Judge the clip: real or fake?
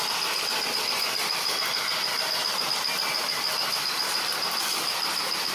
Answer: real